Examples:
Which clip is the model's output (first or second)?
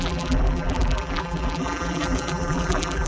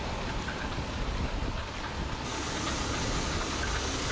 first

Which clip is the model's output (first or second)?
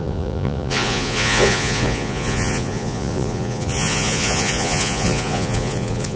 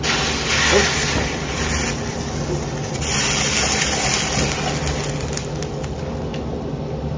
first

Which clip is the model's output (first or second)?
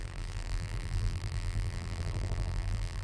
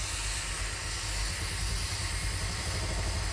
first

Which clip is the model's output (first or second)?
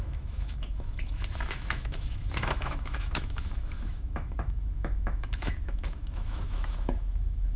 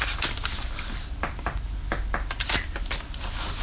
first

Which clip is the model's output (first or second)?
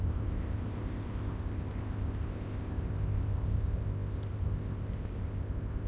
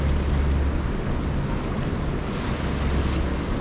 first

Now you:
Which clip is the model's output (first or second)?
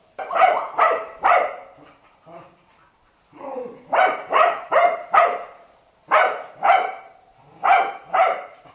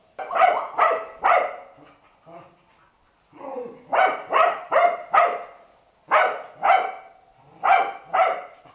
first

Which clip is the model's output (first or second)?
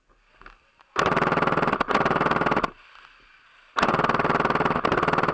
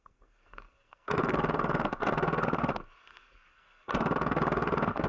second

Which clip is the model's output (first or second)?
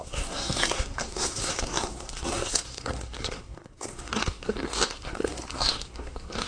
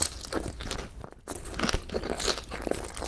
first